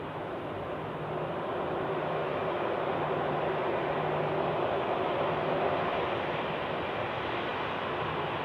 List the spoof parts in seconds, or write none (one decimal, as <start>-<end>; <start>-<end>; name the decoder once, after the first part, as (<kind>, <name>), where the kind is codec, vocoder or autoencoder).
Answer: none